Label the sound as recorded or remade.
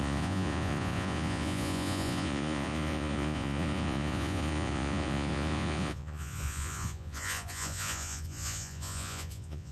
remade